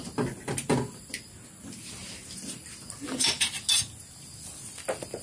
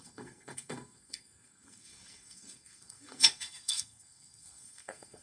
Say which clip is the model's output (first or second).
second